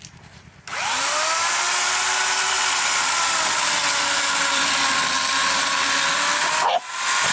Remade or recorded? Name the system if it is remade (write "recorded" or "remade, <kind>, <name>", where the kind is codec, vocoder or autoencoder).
recorded